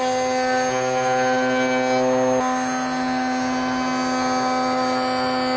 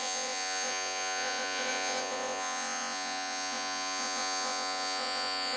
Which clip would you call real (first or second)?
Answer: first